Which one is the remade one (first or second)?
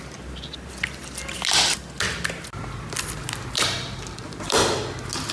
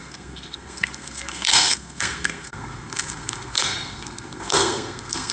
second